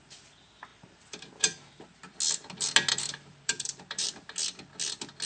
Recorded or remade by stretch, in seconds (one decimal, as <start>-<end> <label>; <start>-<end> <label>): 0.0-0.7 recorded; 0.7-1.3 remade; 1.3-2.9 recorded; 2.9-4.1 remade; 4.1-5.3 recorded